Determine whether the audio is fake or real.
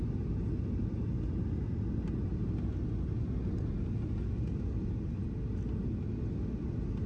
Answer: real